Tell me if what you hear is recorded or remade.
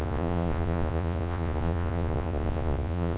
remade